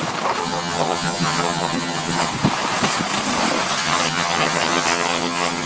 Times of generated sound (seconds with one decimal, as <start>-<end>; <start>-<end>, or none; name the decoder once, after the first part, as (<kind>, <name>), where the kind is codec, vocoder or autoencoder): 0.4-2.3 (vocoder, HiFi-GAN); 3.8-5.7